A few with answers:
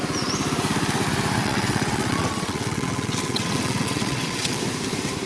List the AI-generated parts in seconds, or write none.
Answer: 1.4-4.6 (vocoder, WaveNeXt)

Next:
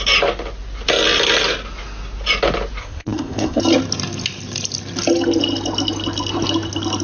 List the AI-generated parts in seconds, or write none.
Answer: 2.8-3.6 (codec, ZipCodec)

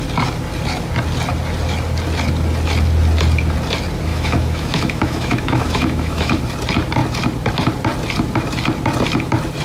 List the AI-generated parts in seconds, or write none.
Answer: 4.1-6.4 (autoencoder, DAC-VAE)

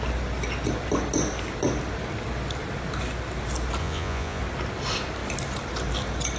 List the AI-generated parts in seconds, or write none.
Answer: 3.8-4.4 (vocoder, Vocos)

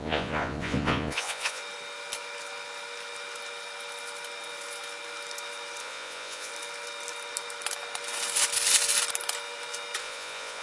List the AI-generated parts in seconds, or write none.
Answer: 0.0-1.6 (vocoder, Vocos); 5.8-6.5; 10.0-10.6

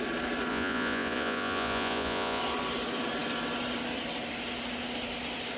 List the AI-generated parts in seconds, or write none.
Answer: 0.5-2.4 (vocoder, Vocos)

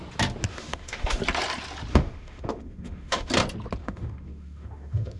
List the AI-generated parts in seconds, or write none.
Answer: 0.5-1.2 (autoencoder, DAC-VAE); 1.9-3.3; 3.8-5.2